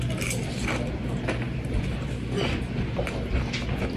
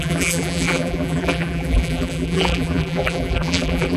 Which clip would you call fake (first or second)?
second